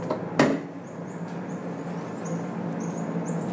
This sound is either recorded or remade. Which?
recorded